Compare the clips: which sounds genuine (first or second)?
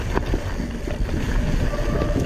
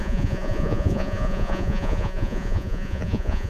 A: first